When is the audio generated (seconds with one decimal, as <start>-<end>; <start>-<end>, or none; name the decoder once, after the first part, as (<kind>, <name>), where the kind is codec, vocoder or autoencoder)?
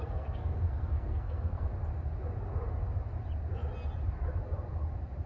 0.0-1.7 (codec, SNAC)